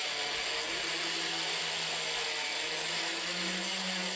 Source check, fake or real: real